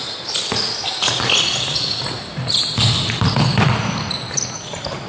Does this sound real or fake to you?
real